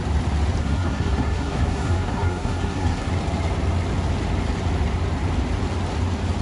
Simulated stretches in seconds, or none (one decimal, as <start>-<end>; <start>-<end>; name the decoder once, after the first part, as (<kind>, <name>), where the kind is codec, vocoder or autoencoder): 0.6-3.1 (codec, SNAC)